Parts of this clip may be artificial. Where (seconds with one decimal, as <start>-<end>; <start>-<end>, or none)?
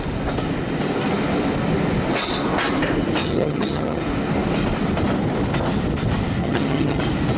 3.2-4.0; 6.4-7.0